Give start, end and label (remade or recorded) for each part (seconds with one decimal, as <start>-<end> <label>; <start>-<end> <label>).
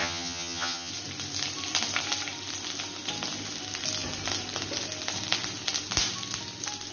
0.0-0.9 remade; 0.9-6.9 recorded